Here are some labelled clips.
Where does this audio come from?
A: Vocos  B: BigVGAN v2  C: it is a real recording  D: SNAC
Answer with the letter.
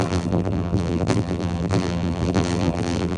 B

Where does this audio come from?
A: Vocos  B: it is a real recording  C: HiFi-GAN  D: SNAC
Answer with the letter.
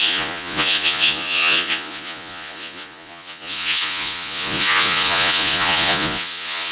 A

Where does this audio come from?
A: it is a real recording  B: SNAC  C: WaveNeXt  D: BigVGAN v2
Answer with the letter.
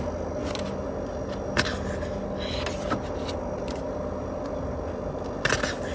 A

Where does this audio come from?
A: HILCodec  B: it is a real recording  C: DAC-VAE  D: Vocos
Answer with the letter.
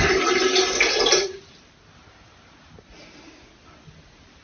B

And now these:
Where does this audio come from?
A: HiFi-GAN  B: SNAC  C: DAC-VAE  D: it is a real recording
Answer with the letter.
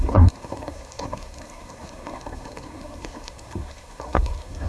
B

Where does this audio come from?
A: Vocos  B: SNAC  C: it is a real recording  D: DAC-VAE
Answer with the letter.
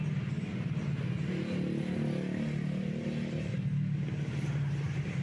C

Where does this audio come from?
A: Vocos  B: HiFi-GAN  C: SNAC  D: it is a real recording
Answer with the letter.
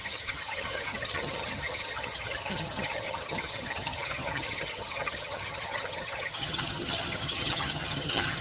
B